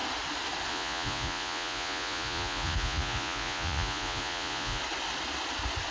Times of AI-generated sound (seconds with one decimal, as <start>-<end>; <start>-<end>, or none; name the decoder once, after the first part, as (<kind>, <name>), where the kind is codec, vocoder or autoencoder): 0.7-4.8 (vocoder, Vocos)